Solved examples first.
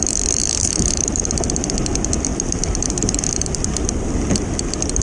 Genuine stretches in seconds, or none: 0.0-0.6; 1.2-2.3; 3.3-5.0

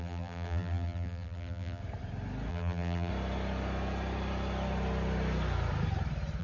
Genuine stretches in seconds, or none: 1.8-2.5; 3.1-6.4